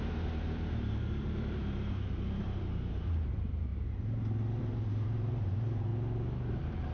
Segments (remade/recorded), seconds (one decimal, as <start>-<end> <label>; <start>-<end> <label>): 0.0-3.7 remade; 3.7-4.6 recorded; 4.6-5.9 remade; 5.9-6.5 recorded; 6.5-6.9 remade